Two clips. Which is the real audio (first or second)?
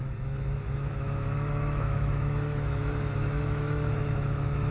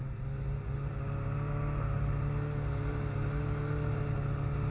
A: second